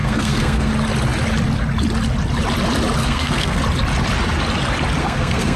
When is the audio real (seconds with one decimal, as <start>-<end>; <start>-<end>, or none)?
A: 0.7-3.0; 3.6-5.0